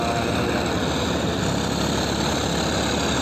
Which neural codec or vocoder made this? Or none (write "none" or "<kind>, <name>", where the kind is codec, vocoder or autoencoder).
none